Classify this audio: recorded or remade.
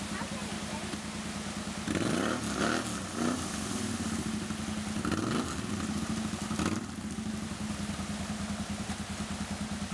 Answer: recorded